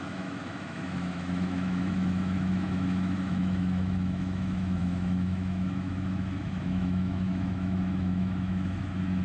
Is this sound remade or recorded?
remade